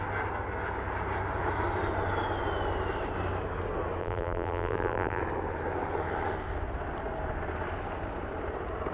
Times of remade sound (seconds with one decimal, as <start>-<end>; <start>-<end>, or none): 4.0-5.2